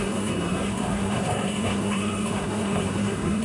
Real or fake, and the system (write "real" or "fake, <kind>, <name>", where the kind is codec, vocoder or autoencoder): fake, codec, SNAC